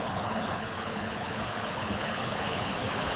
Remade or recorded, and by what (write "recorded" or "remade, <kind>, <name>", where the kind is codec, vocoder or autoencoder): remade, codec, HILCodec